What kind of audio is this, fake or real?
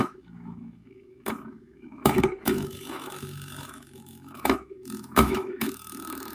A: fake